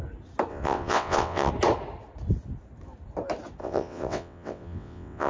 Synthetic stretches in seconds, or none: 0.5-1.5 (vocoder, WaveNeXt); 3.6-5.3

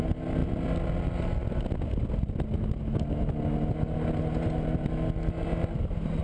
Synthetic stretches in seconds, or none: none

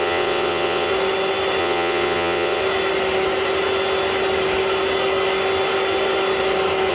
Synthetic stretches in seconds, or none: 0.0-0.9 (vocoder, WaveNeXt); 1.6-2.6

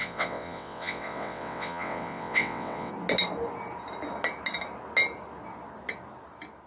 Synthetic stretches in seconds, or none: 0.0-2.9 (vocoder, WaveNeXt)

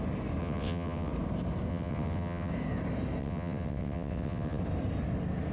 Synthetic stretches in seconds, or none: 0.4-1.1 (vocoder, WaveNeXt); 1.7-2.5; 3.2-4.6

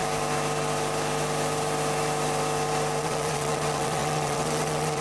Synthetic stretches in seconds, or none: 3.0-5.0 (vocoder, WaveNeXt)

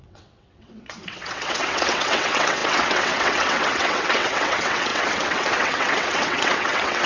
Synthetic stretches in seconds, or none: 0.0-7.1 (vocoder, WaveNeXt)

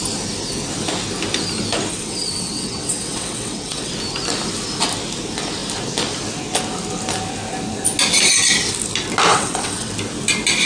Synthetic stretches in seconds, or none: 1.9-3.9 (vocoder, WaveNeXt); 9.3-9.9